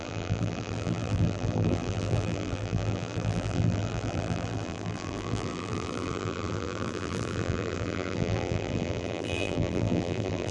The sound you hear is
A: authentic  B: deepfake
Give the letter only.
B